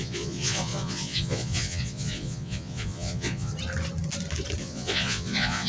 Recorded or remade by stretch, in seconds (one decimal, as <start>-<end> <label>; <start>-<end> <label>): 0.0-3.5 remade; 3.5-4.6 recorded; 4.6-5.7 remade